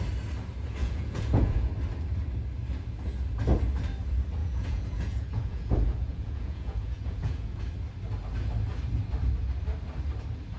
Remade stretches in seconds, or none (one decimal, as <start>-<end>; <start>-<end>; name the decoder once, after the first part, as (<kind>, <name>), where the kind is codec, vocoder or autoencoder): 0.8-1.7 (vocoder, Vocos); 4.4-7.6